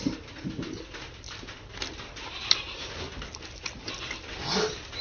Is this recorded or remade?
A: recorded